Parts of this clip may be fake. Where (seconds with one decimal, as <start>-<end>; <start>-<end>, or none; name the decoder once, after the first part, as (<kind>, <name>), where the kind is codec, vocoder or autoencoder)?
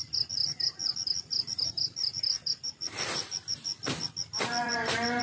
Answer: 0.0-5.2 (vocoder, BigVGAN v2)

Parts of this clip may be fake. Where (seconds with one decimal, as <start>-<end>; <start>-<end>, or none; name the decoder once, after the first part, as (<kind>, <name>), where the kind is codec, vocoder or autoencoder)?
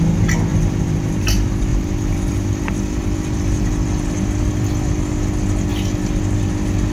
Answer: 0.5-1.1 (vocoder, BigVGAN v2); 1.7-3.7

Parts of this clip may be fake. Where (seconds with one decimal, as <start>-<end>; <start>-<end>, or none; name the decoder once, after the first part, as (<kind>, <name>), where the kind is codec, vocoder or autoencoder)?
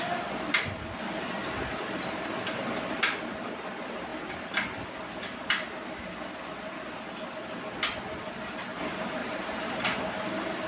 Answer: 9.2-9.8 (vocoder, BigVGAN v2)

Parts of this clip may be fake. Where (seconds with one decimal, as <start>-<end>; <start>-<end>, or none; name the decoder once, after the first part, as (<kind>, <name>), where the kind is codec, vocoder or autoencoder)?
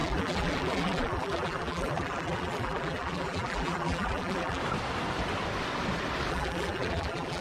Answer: 0.0-4.6 (vocoder, BigVGAN v2); 6.3-7.4